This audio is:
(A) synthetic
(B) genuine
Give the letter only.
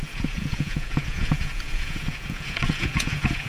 A